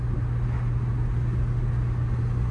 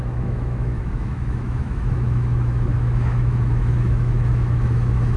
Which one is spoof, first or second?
second